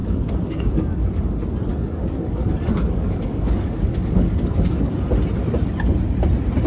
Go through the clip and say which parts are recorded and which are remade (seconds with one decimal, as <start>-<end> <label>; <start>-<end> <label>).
0.0-1.2 remade; 1.2-1.7 recorded; 1.7-4.9 remade; 4.9-6.7 recorded